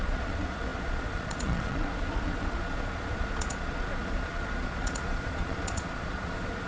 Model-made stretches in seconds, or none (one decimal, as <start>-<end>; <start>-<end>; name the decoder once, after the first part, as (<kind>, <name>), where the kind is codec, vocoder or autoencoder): 0.0-6.7 (vocoder, Vocos)